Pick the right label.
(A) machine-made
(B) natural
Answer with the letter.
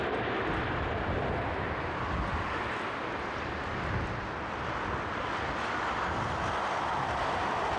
B